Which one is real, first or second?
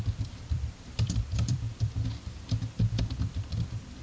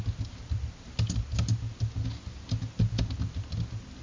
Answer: second